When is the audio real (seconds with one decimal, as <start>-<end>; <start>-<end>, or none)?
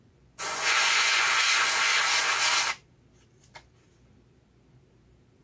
1.9-5.4